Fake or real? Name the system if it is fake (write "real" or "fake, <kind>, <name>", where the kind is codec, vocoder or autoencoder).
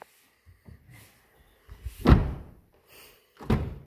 real